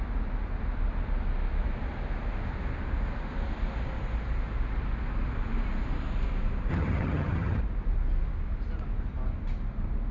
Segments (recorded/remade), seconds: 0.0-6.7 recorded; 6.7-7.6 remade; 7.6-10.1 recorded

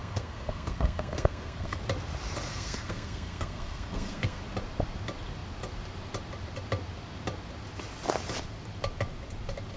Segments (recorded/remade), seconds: 0.0-1.8 remade; 1.8-2.5 recorded; 2.5-4.4 remade; 4.4-9.8 recorded

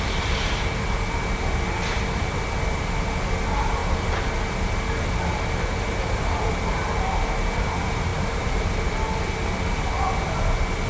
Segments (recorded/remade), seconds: 0.0-8.1 recorded; 8.1-8.8 remade; 8.8-10.9 recorded

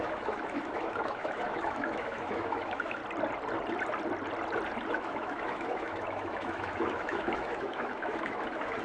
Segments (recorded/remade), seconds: 0.0-3.0 remade; 3.0-4.9 recorded; 4.9-8.8 remade

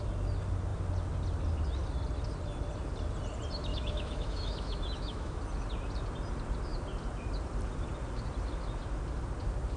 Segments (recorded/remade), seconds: 0.0-3.7 recorded; 3.7-5.4 remade; 5.4-9.8 recorded

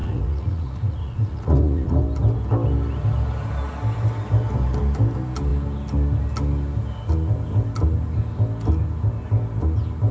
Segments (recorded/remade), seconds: 0.0-2.0 remade; 2.0-10.1 recorded

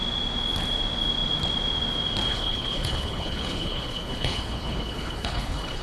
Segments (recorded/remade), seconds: 0.0-2.3 recorded; 2.3-5.8 remade

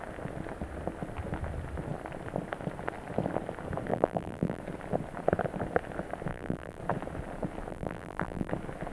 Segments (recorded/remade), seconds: 0.0-3.9 recorded; 3.9-4.6 remade; 4.6-6.3 recorded; 6.3-6.8 remade; 6.8-7.7 recorded; 7.7-8.5 remade; 8.5-8.9 recorded